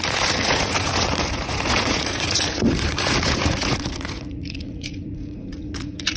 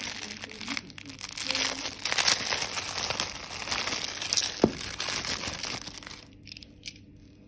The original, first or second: second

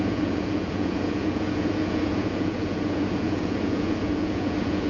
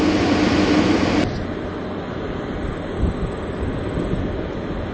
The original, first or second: second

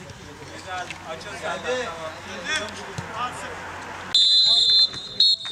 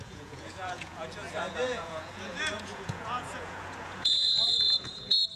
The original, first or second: first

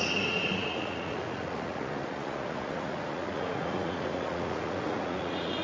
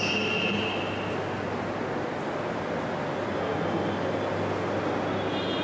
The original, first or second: second